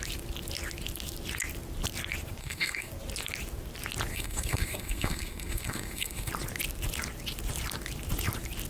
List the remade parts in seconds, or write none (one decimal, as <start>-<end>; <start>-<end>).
2.4-2.9; 4.1-6.3